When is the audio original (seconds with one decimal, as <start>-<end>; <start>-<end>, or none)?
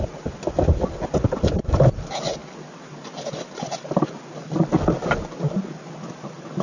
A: 0.0-6.6